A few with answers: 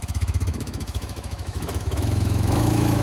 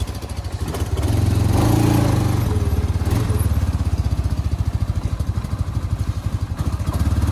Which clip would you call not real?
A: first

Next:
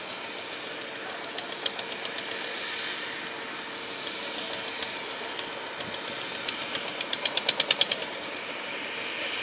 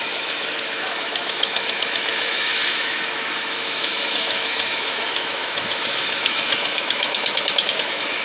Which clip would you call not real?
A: second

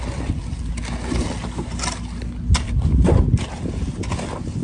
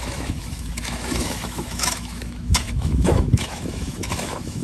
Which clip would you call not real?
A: second